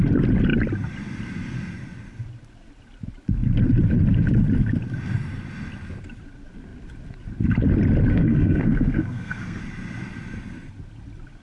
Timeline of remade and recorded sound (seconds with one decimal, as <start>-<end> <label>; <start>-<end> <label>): 0.0-8.1 recorded; 8.1-9.6 remade; 9.6-11.4 recorded